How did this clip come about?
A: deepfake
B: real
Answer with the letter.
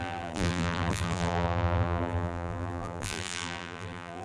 A